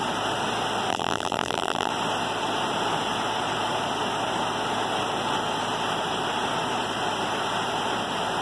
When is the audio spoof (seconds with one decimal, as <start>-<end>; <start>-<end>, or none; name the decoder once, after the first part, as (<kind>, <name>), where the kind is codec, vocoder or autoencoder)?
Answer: 0.9-1.9 (vocoder, BigVGAN v2)